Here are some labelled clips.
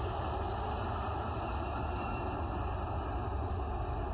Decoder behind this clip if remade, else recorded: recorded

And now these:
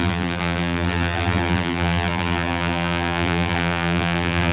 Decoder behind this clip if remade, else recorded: remade, vocoder, BigVGAN v2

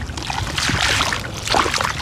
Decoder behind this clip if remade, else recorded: recorded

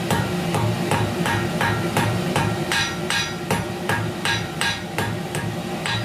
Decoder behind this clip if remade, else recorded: remade, vocoder, BigVGAN v2